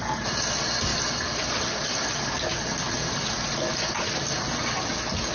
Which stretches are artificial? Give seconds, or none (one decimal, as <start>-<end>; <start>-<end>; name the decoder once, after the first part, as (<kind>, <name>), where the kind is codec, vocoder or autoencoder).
none